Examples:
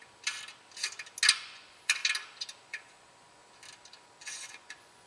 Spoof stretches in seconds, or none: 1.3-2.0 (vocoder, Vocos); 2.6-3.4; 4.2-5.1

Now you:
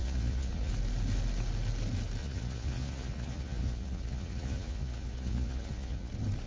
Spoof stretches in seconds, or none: 0.0-0.7 (vocoder, Vocos); 2.2-6.1

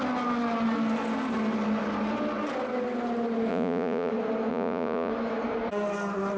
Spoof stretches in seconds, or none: 3.5-4.1 (vocoder, Vocos); 4.5-5.1

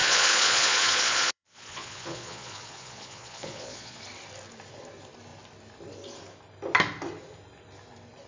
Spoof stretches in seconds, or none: 0.0-4.0 (vocoder, Vocos)